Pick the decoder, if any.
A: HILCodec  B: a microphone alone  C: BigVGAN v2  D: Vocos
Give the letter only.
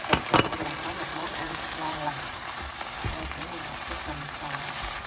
C